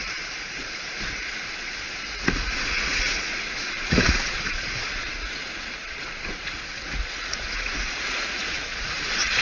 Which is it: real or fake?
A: fake